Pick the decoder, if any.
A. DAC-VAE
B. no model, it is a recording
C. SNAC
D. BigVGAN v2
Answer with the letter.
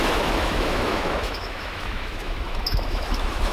A